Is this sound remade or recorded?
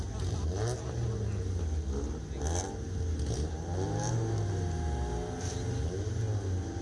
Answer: recorded